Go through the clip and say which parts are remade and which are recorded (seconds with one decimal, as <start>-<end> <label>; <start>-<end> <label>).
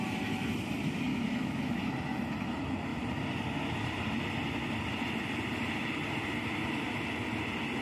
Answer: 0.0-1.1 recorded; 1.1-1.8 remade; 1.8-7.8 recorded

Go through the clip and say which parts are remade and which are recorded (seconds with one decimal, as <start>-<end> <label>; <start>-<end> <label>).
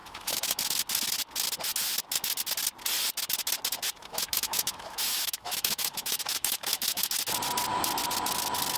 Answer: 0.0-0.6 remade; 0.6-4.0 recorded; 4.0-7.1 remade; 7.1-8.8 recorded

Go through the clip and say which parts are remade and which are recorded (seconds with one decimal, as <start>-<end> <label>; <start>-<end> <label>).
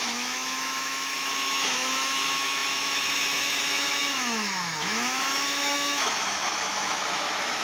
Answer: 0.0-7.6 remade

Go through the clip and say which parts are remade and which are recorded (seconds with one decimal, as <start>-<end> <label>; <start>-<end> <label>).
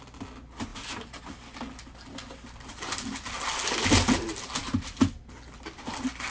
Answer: 0.0-6.3 recorded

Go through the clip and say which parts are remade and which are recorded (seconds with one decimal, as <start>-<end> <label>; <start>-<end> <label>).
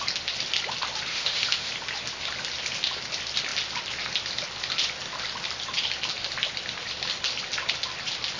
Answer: 0.0-1.1 recorded; 1.1-1.7 remade; 1.7-8.4 recorded